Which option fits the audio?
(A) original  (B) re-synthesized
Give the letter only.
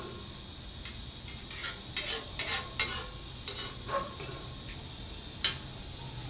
A